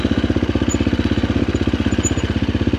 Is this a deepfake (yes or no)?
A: no